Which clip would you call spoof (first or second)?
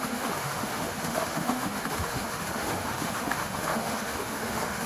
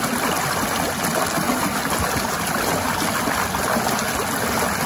first